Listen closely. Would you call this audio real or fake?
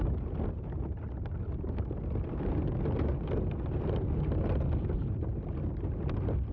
real